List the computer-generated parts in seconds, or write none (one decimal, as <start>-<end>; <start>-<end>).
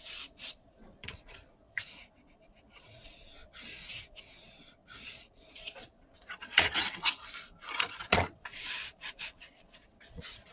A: 0.0-6.8; 7.7-10.5